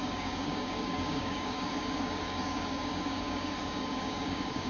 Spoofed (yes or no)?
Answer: yes